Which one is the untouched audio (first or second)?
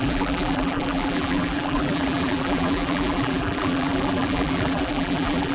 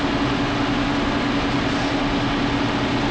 second